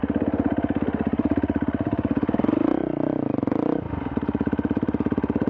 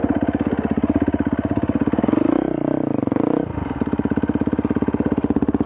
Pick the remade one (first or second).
first